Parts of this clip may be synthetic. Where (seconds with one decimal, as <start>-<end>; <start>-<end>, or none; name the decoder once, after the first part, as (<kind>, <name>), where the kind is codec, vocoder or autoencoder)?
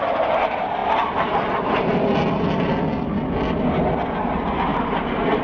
none